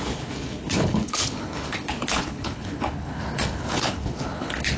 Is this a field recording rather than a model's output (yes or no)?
no